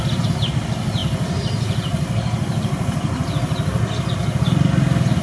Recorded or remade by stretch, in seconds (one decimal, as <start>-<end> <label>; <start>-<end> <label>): 0.0-5.2 recorded